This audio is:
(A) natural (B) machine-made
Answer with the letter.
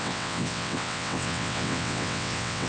B